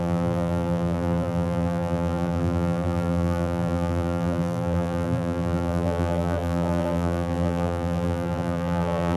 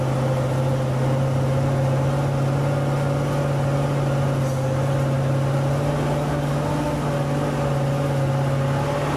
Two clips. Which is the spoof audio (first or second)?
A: first